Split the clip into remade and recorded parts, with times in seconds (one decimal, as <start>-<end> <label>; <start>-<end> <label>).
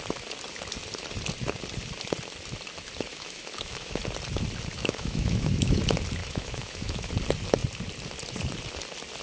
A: 0.0-3.1 recorded; 3.1-4.0 remade; 4.0-4.8 recorded; 4.8-5.8 remade; 5.8-6.2 recorded; 6.2-7.1 remade; 7.1-9.2 recorded